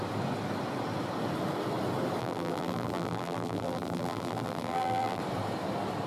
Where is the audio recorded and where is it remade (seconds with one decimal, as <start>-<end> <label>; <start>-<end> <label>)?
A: 0.0-2.2 recorded; 2.2-5.2 remade; 5.2-6.1 recorded